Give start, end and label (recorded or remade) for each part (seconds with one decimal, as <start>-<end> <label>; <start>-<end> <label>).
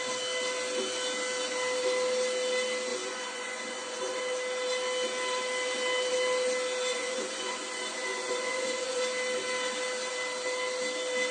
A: 0.0-2.9 recorded; 2.9-4.2 remade; 4.2-6.9 recorded; 6.9-9.0 remade; 9.0-11.3 recorded